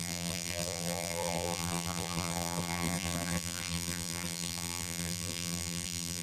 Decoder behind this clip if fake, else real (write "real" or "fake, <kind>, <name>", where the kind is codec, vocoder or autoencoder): fake, vocoder, BigVGAN v2